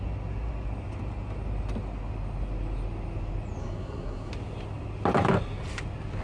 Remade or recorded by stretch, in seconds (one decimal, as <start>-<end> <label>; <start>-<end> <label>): 0.0-3.6 recorded; 3.6-4.3 remade; 4.3-6.2 recorded